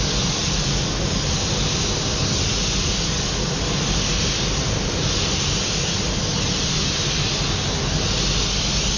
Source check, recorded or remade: recorded